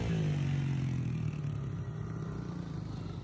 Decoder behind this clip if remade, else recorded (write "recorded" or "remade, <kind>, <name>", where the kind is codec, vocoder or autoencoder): recorded